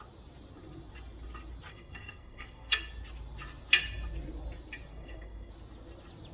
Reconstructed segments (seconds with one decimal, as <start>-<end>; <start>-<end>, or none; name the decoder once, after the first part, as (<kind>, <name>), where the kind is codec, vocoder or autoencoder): 1.7-2.9 (codec, SNAC); 4.9-5.5